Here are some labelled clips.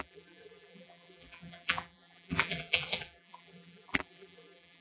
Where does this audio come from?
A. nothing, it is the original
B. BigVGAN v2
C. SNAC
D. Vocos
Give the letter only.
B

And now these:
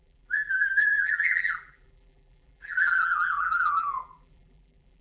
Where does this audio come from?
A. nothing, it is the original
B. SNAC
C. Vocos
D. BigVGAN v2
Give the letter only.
D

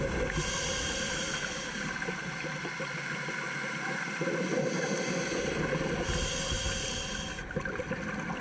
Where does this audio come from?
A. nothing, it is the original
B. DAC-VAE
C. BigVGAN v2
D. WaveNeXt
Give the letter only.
A